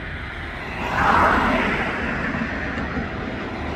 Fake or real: real